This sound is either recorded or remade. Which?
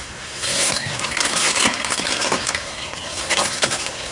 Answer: remade